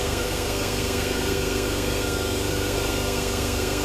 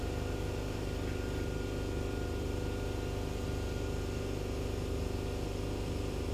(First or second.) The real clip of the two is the second